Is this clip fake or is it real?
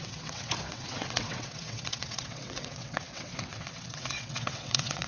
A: fake